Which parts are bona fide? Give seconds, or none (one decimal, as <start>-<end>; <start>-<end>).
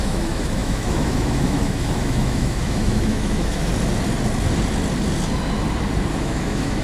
3.7-6.2